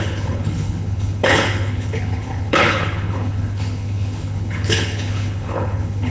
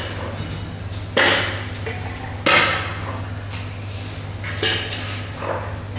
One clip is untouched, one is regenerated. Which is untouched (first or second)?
second